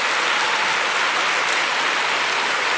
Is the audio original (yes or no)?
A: yes